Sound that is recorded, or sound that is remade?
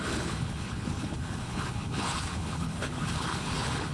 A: remade